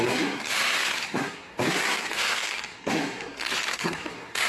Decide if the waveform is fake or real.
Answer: fake